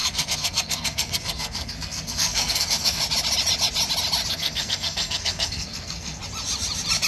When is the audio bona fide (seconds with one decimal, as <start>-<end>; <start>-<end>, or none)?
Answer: 3.0-4.3; 6.2-7.1

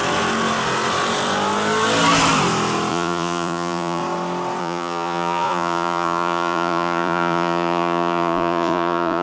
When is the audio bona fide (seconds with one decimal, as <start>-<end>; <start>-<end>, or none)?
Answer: 0.0-2.9; 4.0-4.6

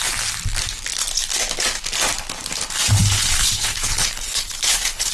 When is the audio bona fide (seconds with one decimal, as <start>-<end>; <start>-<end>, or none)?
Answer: 0.0-3.0

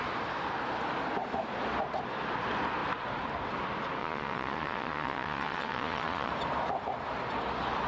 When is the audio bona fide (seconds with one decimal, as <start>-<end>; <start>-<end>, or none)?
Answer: 0.0-4.0; 6.3-7.9

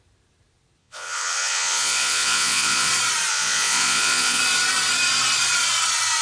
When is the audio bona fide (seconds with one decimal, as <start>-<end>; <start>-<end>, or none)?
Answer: 0.0-0.8; 2.9-3.3; 4.4-6.2

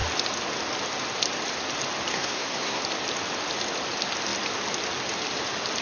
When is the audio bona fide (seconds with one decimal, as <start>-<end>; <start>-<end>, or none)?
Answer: 0.0-2.1; 2.8-5.8

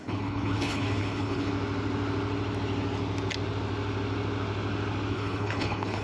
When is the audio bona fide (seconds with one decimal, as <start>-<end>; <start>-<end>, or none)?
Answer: 1.5-5.1